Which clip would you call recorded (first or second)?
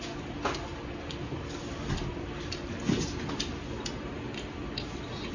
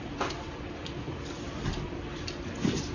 first